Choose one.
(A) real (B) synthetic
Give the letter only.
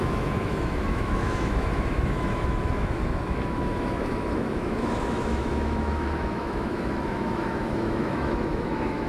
B